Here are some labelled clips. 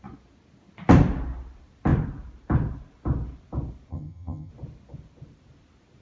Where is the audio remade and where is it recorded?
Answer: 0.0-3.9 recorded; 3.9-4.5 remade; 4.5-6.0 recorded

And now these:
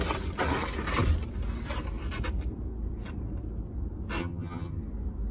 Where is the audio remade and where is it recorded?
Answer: 0.0-4.2 recorded; 4.2-4.8 remade; 4.8-5.3 recorded

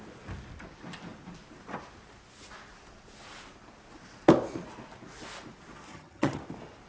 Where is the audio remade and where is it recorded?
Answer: 0.0-5.9 recorded; 5.9-6.4 remade; 6.4-6.9 recorded

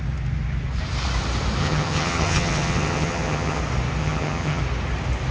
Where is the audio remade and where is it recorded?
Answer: 0.0-1.6 recorded; 1.6-3.6 remade; 3.6-4.0 recorded; 4.0-4.6 remade; 4.6-5.3 recorded

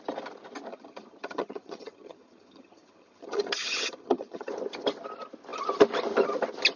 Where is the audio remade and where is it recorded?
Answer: 0.0-0.7 recorded; 0.7-4.5 remade; 4.5-6.8 recorded

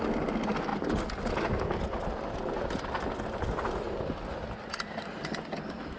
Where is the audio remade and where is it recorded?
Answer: 0.0-6.0 recorded

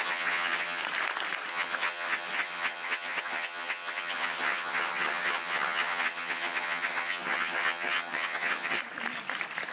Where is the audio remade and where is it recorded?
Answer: 0.0-0.8 remade; 0.8-1.5 recorded; 1.5-8.8 remade; 8.8-9.7 recorded

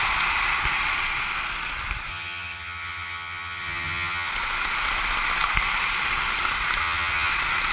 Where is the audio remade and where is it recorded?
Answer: 0.0-2.1 recorded; 2.1-4.3 remade; 4.3-6.8 recorded; 6.8-7.3 remade; 7.3-7.7 recorded